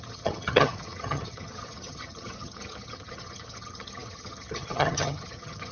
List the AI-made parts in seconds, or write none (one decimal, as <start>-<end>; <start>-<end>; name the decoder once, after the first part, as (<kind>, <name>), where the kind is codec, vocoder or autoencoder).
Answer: 0.0-5.7 (vocoder, HiFi-GAN)